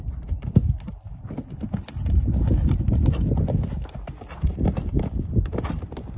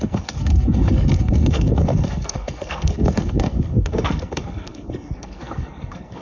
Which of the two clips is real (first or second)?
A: first